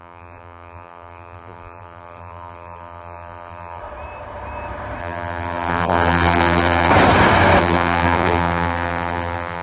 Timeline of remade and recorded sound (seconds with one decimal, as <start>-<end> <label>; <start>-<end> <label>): 0.0-3.8 remade; 3.8-5.0 recorded; 5.0-6.9 remade; 6.9-7.6 recorded; 7.6-9.6 remade